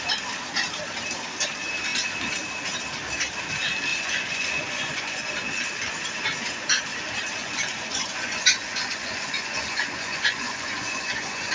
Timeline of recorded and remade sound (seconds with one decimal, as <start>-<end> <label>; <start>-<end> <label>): 0.0-3.9 recorded; 3.9-5.3 remade; 5.3-7.4 recorded; 7.4-11.5 remade